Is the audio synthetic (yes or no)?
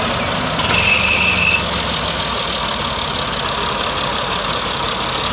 no